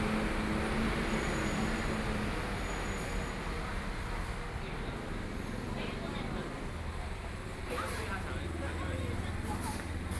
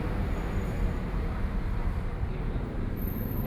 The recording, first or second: first